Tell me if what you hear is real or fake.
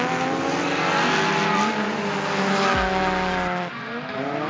real